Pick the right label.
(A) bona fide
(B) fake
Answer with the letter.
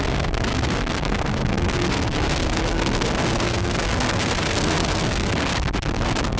B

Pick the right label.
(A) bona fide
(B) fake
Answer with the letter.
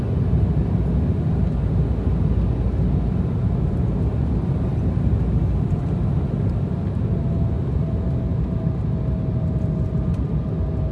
A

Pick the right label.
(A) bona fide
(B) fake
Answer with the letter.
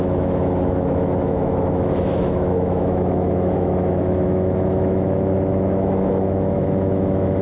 B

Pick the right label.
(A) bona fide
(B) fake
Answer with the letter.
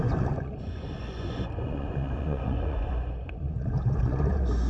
B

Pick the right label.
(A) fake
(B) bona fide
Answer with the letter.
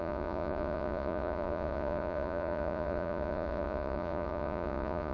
A